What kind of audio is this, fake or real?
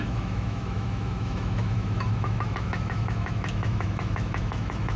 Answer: fake